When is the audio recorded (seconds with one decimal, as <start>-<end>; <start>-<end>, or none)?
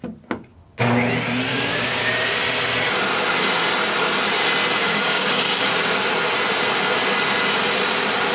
0.0-1.5; 2.4-4.8; 5.7-8.3